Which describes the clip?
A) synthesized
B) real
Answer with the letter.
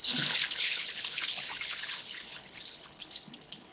A